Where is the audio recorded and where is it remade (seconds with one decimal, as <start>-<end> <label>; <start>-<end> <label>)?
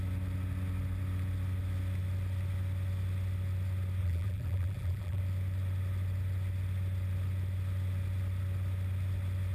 0.0-4.0 recorded; 4.0-5.2 remade; 5.2-9.5 recorded